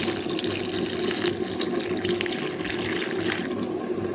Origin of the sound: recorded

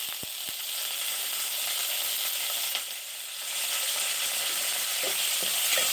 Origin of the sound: recorded